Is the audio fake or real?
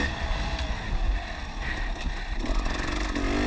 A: real